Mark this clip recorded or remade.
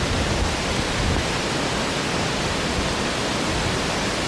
recorded